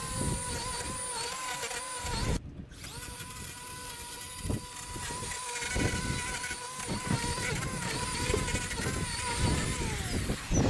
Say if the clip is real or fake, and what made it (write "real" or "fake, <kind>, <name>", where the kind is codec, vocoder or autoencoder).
real